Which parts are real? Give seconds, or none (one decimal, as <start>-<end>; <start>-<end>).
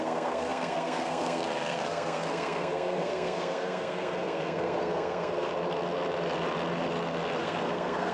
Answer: 5.5-7.4